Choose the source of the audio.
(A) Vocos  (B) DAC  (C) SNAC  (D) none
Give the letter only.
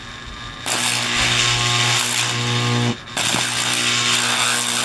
D